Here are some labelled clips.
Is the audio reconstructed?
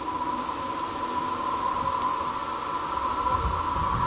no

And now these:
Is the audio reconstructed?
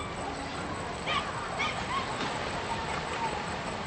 no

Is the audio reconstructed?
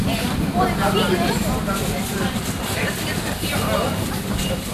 yes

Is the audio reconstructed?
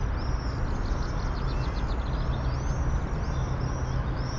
no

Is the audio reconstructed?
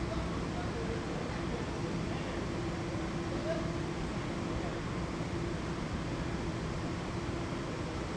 no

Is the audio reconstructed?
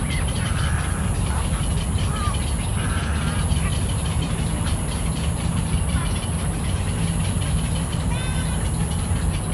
no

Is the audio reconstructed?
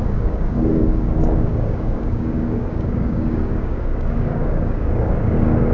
yes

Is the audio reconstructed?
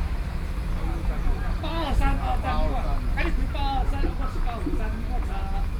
no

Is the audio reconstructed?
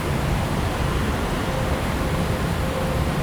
yes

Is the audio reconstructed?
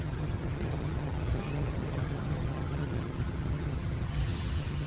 yes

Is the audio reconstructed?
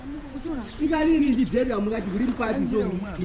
yes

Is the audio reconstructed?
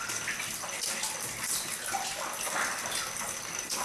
no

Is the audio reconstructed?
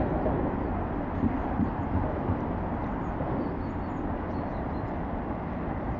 no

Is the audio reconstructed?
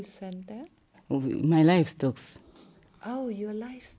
no